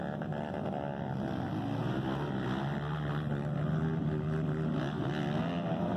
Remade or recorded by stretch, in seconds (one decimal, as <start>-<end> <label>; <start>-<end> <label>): 0.0-6.0 recorded

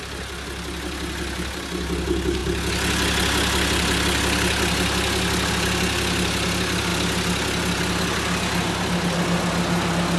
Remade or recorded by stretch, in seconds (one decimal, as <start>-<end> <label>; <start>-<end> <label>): 0.0-10.2 recorded

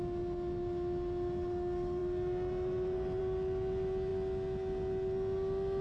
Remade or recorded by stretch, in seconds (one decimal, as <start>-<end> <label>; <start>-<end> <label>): 0.0-5.8 recorded

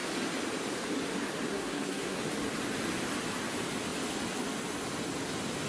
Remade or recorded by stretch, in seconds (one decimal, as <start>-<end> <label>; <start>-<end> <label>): 0.0-1.5 recorded; 1.5-2.2 remade; 2.2-5.7 recorded

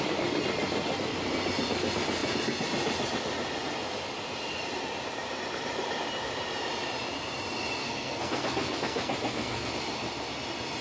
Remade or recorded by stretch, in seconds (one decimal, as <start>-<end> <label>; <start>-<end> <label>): 0.0-7.8 recorded; 7.8-9.7 remade; 9.7-10.8 recorded

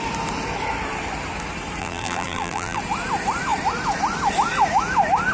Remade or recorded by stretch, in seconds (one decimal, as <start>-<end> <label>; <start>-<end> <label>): 0.0-1.8 recorded; 1.8-2.8 remade; 2.8-5.3 recorded

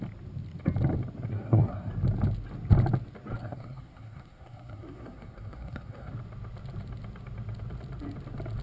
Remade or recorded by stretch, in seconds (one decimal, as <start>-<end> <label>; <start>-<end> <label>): 0.0-1.3 recorded; 1.3-1.9 remade; 1.9-3.4 recorded; 3.4-6.1 remade; 6.1-8.6 recorded